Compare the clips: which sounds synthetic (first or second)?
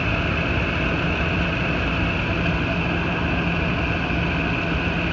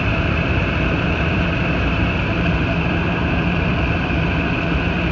second